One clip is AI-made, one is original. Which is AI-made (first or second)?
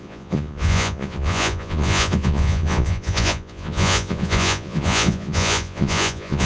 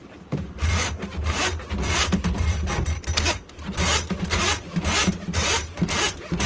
first